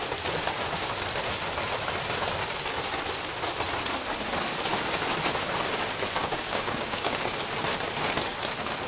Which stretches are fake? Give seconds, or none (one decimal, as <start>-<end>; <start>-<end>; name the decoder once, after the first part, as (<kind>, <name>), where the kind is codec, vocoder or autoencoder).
6.2-7.3 (codec, DAC)